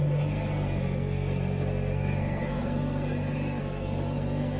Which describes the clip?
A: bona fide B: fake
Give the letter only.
B